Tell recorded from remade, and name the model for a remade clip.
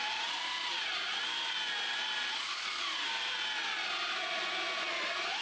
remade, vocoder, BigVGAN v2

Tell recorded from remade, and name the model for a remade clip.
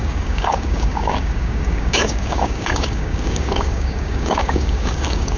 remade, codec, DAC